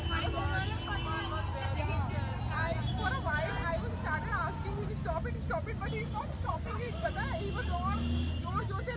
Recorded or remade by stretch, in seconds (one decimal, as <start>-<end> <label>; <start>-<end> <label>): 0.0-6.2 recorded; 6.2-7.1 remade; 7.1-9.0 recorded